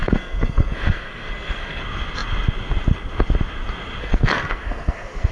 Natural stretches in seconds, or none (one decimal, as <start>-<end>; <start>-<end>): 1.8-4.0